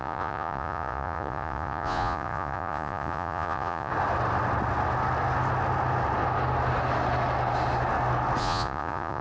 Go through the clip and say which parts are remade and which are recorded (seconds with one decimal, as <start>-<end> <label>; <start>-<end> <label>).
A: 0.0-3.9 remade; 3.9-8.4 recorded; 8.4-9.2 remade